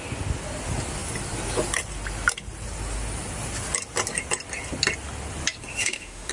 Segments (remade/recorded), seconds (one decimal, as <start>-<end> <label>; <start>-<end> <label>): 0.0-5.7 recorded; 5.7-6.3 remade